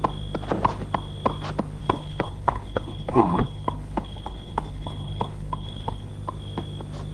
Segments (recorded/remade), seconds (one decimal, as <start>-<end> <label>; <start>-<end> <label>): 0.0-1.8 recorded; 1.8-6.1 remade; 6.1-7.1 recorded